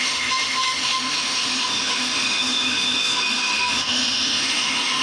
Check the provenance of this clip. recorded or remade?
remade